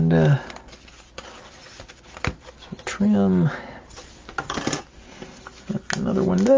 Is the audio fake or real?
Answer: real